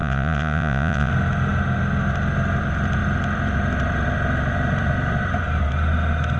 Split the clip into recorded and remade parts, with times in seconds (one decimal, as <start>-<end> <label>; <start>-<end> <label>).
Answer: 0.0-1.1 remade; 1.1-6.4 recorded